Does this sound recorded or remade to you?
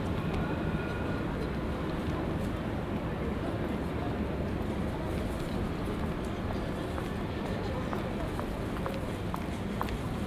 recorded